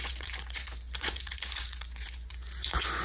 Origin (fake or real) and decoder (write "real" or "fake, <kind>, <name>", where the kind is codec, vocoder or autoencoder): fake, vocoder, Vocos